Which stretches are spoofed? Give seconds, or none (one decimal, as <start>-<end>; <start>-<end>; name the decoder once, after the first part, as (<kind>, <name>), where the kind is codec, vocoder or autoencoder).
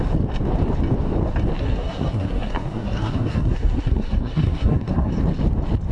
1.6-5.1 (codec, SNAC)